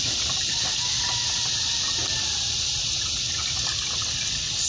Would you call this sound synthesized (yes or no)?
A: no